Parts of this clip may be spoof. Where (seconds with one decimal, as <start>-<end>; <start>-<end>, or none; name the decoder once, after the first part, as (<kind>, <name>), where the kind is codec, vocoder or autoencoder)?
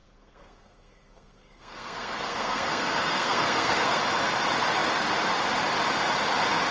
0.0-4.0 (codec, SNAC)